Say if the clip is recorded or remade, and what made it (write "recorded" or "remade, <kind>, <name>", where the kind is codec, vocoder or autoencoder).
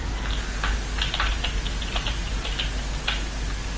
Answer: recorded